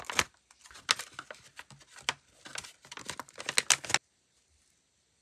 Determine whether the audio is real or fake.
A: real